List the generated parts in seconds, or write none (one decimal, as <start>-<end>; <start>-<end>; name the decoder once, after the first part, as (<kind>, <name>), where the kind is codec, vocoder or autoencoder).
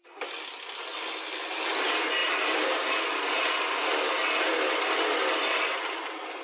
none